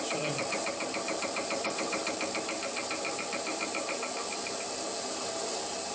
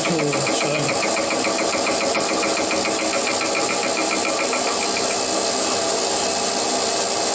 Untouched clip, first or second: second